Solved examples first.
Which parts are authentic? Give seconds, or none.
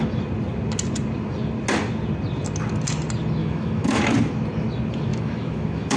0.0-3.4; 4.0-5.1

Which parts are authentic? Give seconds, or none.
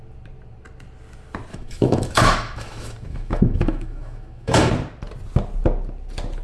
0.0-1.5; 4.7-6.4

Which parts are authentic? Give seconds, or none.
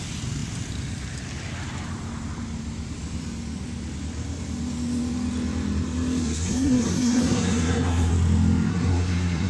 0.0-6.2; 8.1-8.7